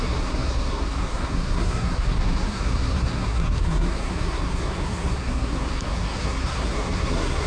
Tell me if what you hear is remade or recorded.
remade